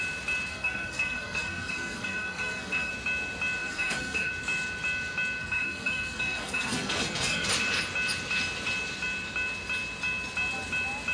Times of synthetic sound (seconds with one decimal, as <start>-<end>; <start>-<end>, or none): 0.5-2.9; 3.6-4.3; 5.4-7.5